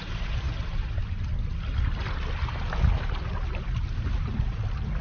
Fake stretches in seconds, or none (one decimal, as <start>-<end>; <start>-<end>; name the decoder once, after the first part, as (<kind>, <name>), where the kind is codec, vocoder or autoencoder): 0.0-1.0 (vocoder, BigVGAN v2)